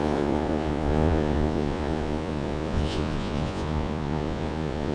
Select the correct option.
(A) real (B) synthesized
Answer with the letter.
B